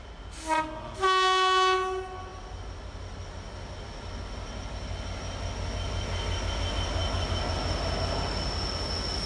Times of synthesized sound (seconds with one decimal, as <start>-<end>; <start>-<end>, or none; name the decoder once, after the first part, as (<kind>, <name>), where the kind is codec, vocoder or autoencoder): none